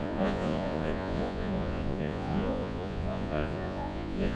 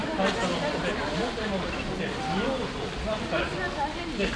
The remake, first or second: first